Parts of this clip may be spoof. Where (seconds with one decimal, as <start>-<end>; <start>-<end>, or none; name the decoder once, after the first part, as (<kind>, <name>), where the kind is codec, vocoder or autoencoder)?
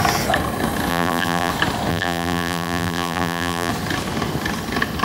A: 0.9-1.5 (vocoder, BigVGAN v2); 1.9-3.7